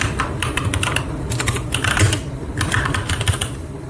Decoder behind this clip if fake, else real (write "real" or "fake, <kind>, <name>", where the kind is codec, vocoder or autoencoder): real